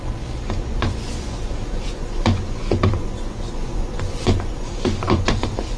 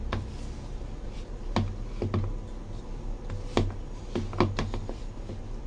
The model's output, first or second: first